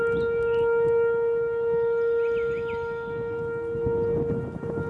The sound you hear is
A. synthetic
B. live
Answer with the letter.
B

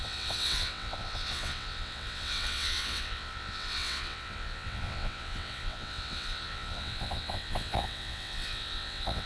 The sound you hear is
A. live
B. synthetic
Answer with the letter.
B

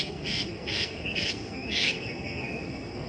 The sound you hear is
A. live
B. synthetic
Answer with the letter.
B